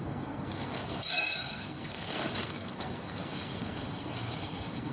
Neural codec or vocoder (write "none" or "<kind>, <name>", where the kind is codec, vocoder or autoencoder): codec, SNAC